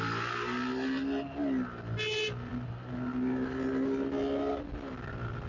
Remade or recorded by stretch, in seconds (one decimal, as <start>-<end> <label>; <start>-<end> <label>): 0.0-5.5 recorded